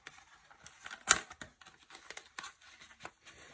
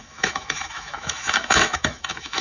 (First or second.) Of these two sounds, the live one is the first